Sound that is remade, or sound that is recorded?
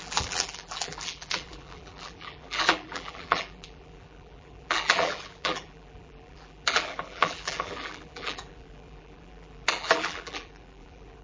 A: remade